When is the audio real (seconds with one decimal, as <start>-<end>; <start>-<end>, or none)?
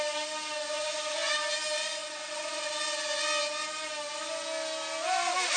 0.0-2.0; 2.7-5.6